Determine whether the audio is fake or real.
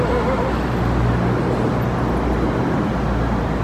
real